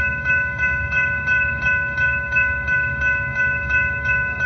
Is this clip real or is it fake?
fake